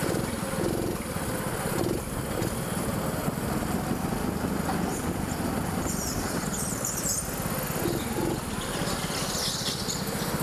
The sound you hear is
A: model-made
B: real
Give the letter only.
B